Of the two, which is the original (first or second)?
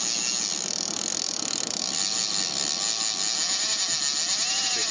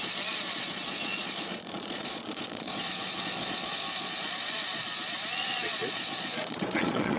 first